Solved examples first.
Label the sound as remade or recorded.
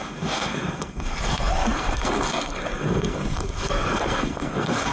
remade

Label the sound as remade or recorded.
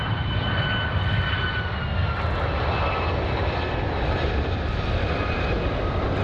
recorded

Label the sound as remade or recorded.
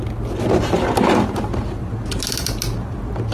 recorded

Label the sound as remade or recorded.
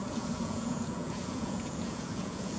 remade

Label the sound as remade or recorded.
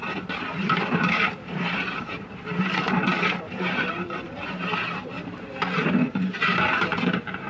remade